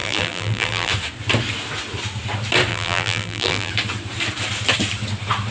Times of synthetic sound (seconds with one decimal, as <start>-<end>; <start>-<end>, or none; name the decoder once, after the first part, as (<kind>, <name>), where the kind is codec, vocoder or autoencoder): 0.0-0.9 (vocoder, BigVGAN v2); 2.7-3.7